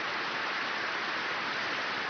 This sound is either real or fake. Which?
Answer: fake